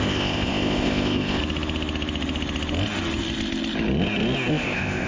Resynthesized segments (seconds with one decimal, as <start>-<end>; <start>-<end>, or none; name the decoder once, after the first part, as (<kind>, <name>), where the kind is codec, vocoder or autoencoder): 0.0-1.4 (codec, ZipCodec); 4.5-5.1